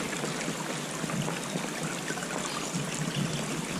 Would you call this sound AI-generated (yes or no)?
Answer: no